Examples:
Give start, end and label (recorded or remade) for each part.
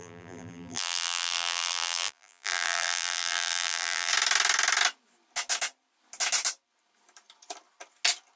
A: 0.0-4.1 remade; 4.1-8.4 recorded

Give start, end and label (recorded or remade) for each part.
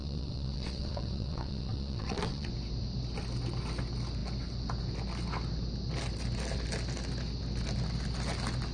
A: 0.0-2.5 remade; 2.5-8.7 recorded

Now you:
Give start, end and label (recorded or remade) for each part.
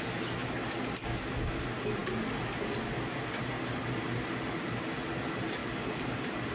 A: 0.0-6.5 recorded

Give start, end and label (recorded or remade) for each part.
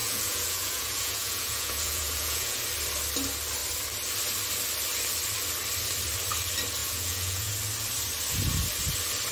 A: 0.0-2.6 remade; 2.6-6.8 recorded; 6.8-7.5 remade; 7.5-9.3 recorded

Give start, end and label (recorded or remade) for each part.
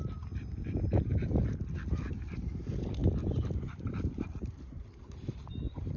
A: 0.0-1.2 remade; 1.2-2.1 recorded; 2.1-3.0 remade; 3.0-4.1 recorded; 4.1-6.0 remade